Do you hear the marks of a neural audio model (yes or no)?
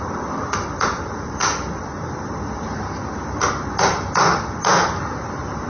no